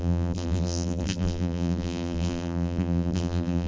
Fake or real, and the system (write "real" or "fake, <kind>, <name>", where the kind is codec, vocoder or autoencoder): fake, vocoder, BigVGAN v2